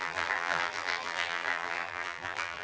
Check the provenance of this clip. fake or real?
fake